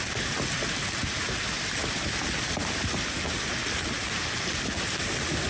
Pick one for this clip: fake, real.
real